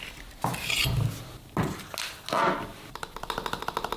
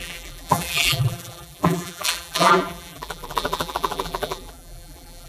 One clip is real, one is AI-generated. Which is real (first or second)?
first